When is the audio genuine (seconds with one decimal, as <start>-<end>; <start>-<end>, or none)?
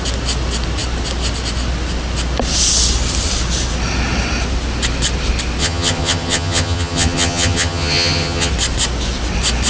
0.0-5.6; 8.5-9.7